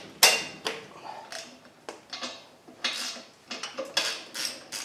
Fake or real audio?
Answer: real